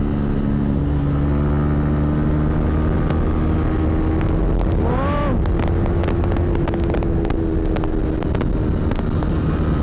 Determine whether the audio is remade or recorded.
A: recorded